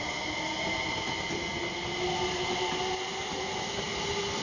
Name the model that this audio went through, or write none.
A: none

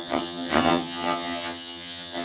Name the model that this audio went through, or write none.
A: vocoder, HiFi-GAN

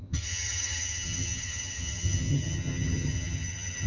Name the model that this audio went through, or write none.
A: vocoder, HiFi-GAN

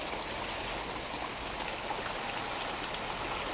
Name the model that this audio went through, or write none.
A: none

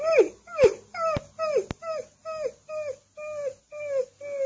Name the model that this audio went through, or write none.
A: none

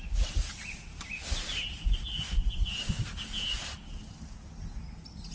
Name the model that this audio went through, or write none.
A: none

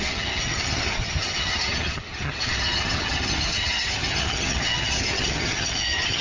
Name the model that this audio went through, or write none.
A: vocoder, HiFi-GAN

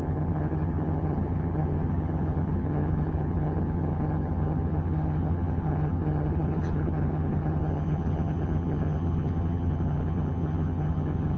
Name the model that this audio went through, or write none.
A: vocoder, HiFi-GAN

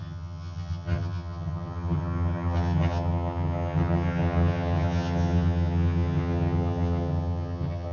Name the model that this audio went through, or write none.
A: vocoder, HiFi-GAN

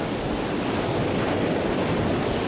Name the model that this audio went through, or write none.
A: none